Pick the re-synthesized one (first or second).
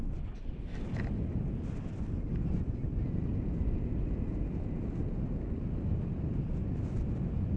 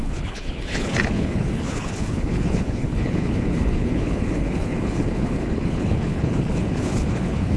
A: second